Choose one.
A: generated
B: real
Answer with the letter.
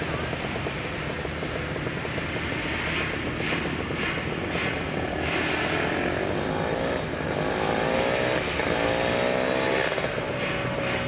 B